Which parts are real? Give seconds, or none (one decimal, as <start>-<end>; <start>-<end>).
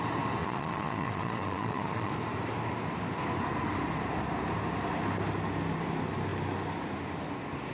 0.0-0.4; 2.1-7.7